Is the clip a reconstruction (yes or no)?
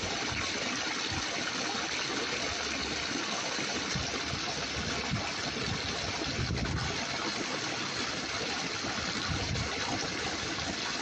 no